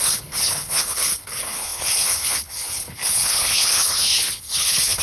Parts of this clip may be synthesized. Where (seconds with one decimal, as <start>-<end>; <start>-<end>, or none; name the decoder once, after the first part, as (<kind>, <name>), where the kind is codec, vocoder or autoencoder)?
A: 0.0-5.0 (codec, HILCodec)